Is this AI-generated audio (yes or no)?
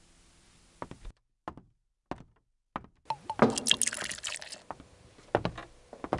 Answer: no